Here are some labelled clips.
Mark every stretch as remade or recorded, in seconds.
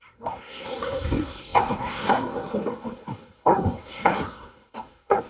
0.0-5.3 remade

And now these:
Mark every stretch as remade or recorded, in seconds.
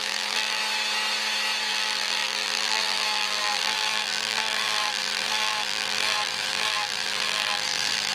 0.0-0.6 remade; 0.6-1.7 recorded; 1.7-8.1 remade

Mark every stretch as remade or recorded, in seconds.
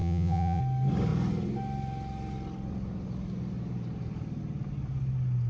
0.0-0.6 remade; 0.6-5.5 recorded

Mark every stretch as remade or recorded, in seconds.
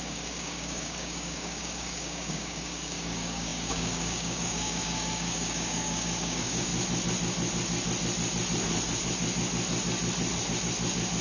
0.0-6.7 remade; 6.7-11.2 recorded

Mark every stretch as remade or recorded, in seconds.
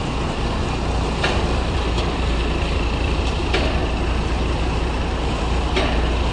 0.0-3.8 recorded; 3.8-5.4 remade; 5.4-6.3 recorded